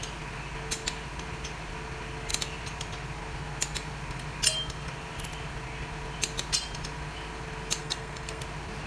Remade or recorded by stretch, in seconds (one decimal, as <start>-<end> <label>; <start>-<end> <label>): 0.0-7.8 recorded; 7.8-8.4 remade; 8.4-8.9 recorded

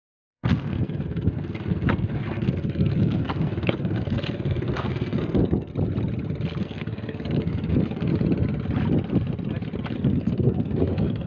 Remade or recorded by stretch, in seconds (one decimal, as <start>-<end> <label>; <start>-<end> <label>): 0.0-5.7 remade; 5.7-6.6 recorded; 6.6-8.1 remade; 8.1-10.0 recorded; 10.0-11.3 remade